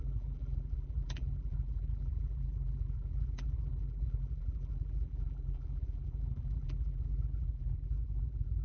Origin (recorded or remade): remade